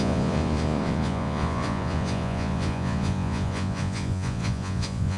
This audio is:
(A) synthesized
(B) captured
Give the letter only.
A